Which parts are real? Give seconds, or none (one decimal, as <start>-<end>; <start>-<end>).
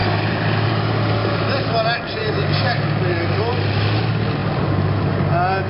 0.7-5.7